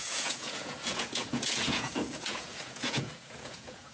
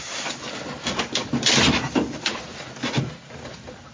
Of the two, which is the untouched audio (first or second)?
second